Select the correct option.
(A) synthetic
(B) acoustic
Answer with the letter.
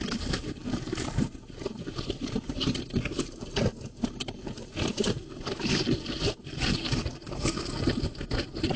A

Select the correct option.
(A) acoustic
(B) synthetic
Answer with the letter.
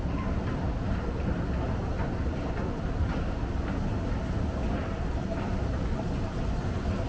A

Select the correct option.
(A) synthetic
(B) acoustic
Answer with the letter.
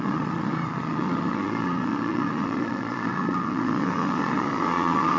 A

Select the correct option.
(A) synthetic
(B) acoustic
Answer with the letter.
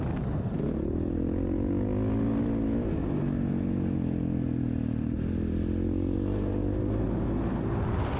B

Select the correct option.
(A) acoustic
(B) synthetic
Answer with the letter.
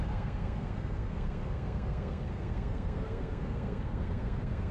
B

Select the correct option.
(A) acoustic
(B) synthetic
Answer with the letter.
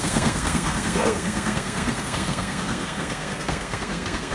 B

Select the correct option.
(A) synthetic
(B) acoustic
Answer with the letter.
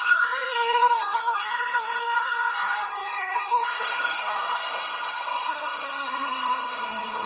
A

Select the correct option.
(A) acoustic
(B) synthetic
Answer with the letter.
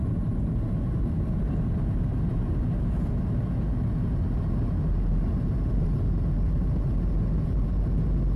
A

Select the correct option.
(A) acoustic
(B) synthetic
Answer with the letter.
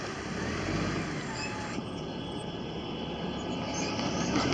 B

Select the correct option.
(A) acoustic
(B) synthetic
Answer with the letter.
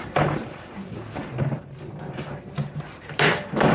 B